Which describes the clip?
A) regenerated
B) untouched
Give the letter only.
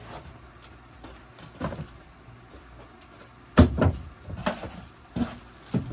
B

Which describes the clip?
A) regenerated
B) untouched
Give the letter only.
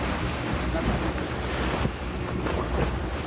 B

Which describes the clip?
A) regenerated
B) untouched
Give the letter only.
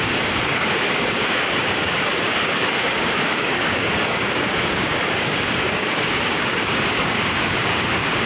A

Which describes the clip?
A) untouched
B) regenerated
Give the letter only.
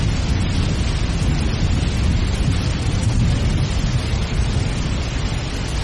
A